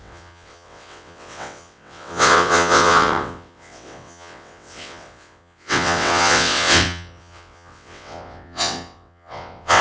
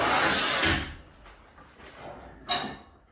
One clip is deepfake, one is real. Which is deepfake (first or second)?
first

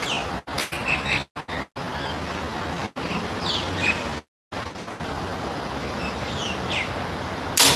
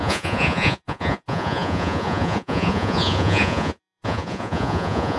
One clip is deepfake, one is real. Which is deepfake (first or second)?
second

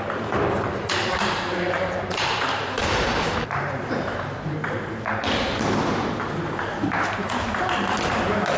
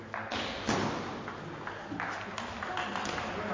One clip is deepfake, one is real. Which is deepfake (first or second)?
first